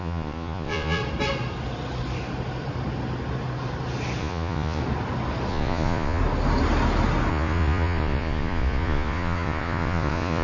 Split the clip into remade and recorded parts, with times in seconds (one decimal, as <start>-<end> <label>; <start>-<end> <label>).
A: 0.0-1.0 remade; 1.0-4.2 recorded; 4.2-4.8 remade; 4.8-5.5 recorded; 5.5-6.2 remade; 6.2-7.3 recorded; 7.3-10.4 remade